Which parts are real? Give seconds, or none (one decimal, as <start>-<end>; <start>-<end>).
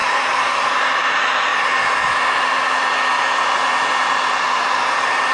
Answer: 1.5-4.4